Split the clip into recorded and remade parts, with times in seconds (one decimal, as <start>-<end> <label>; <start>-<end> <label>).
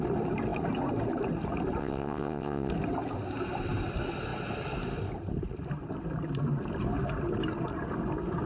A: 0.0-1.8 recorded; 1.8-2.7 remade; 2.7-8.5 recorded